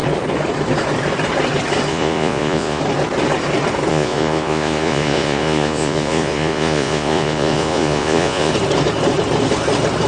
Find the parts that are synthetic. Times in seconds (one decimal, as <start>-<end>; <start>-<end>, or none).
1.9-2.8; 3.9-8.5